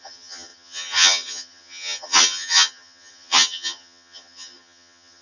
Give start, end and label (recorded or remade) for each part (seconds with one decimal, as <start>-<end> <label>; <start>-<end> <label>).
0.0-5.2 remade